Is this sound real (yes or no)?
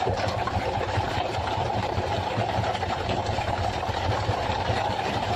no